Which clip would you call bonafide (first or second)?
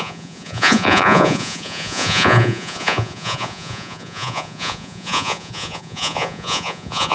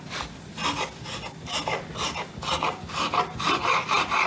second